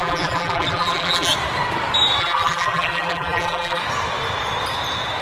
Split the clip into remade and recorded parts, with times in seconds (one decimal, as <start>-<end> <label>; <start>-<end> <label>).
0.0-1.3 remade; 1.3-2.2 recorded; 2.2-3.8 remade; 3.8-5.2 recorded